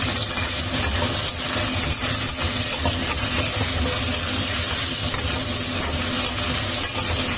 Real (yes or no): yes